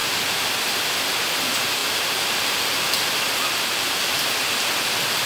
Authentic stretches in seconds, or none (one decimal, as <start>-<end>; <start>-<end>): 0.0-1.8; 4.3-5.3